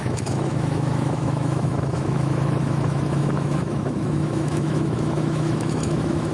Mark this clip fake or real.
fake